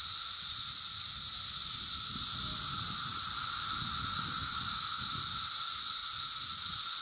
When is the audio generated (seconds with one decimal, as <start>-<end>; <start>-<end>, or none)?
6.0-7.0